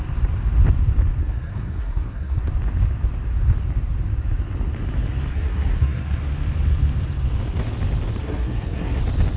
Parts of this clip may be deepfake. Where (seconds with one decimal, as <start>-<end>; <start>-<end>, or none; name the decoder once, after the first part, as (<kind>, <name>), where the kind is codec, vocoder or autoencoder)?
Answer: 1.2-2.4 (codec, SNAC); 5.3-6.2; 8.2-9.0